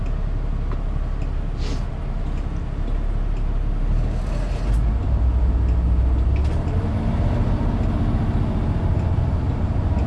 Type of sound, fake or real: real